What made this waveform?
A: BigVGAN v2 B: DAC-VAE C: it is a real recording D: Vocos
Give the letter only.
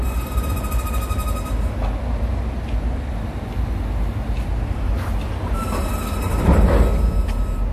C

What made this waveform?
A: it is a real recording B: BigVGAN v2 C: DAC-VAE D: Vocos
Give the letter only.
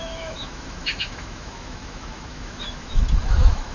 C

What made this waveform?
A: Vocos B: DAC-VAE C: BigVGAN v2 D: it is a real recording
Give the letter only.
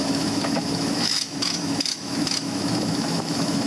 B